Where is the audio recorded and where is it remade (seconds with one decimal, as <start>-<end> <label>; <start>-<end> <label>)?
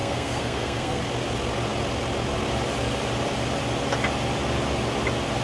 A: 0.0-1.0 remade; 1.0-5.4 recorded